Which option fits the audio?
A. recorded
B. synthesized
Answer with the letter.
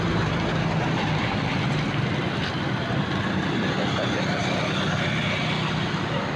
A